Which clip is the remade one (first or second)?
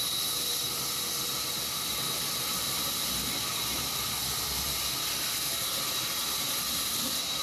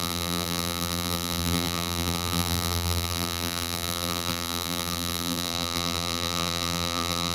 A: second